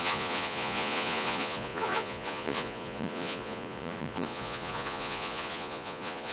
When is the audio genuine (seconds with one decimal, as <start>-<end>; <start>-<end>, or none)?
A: none